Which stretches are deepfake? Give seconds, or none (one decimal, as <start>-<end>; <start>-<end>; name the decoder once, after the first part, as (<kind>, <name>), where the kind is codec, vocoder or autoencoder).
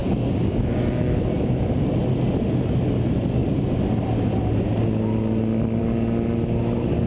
0.0-1.3 (codec, DAC)